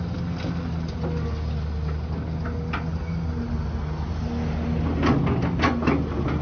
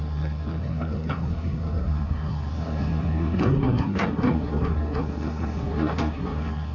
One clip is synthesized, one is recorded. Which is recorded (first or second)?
first